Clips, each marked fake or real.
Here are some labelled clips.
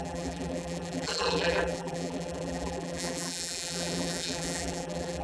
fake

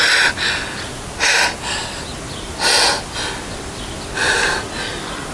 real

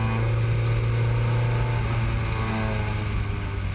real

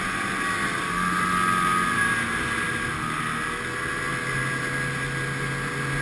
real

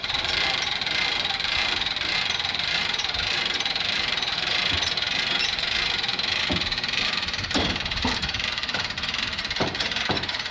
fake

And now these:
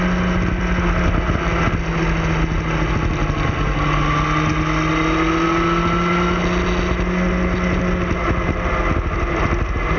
real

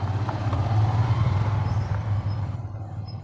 fake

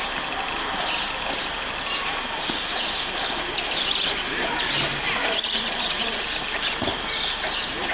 fake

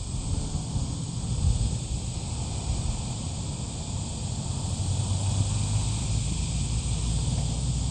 real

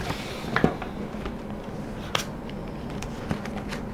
real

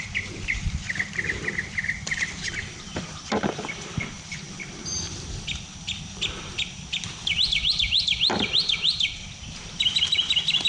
fake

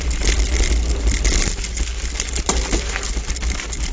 real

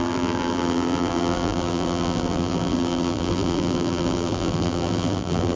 fake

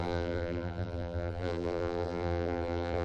fake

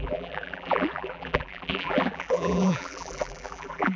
fake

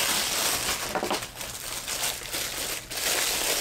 real